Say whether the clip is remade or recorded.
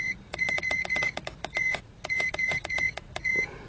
remade